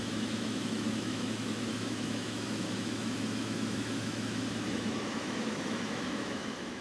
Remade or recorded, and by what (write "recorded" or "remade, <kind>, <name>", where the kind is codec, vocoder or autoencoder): remade, autoencoder, DAC-VAE